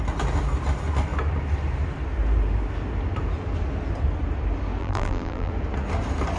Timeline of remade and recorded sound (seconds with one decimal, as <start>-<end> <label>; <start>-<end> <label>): 0.0-4.8 recorded; 4.8-5.5 remade; 5.5-6.4 recorded